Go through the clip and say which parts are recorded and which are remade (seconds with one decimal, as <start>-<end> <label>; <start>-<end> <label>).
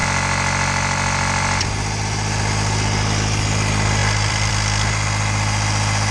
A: 0.0-1.6 remade; 1.6-4.0 recorded; 4.0-4.5 remade; 4.5-6.1 recorded